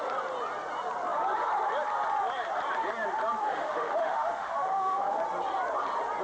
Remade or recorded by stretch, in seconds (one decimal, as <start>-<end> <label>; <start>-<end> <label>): 0.0-3.4 recorded; 3.4-5.2 remade; 5.2-6.2 recorded